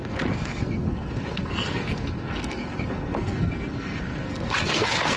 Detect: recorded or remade remade